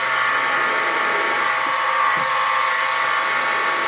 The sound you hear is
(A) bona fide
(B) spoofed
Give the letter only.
A